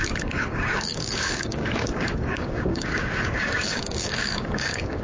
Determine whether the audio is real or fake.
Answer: fake